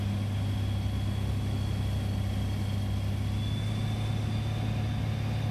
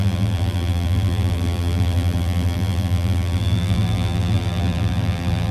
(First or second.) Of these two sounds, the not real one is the second